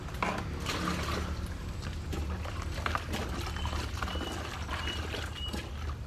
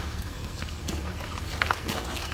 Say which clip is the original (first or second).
first